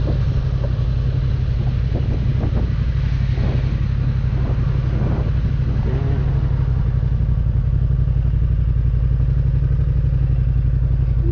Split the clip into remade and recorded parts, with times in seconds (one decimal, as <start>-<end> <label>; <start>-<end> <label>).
0.0-11.3 recorded